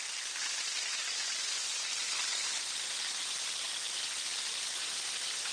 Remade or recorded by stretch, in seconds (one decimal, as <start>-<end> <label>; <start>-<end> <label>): 0.0-5.5 recorded